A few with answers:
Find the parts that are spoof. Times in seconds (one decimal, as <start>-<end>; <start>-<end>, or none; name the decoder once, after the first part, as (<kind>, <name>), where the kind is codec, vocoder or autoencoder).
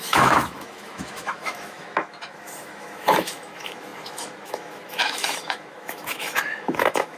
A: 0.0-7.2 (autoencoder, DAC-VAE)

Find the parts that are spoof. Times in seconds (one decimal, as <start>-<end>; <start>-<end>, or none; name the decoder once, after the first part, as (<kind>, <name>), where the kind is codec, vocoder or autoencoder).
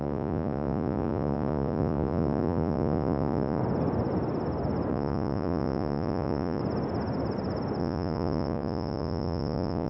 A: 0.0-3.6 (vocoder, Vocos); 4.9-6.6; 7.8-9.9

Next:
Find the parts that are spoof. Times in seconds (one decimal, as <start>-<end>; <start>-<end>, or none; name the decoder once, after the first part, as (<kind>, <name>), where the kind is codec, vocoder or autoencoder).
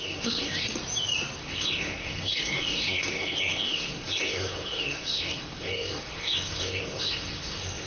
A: 0.0-0.6 (codec, SNAC); 1.4-7.9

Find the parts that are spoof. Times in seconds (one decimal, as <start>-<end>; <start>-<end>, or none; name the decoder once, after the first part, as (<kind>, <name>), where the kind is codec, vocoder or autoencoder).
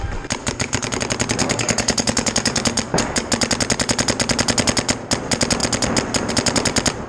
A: 0.4-1.0 (codec, DAC); 1.4-3.3